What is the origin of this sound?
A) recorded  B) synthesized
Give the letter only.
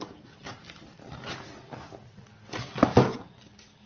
A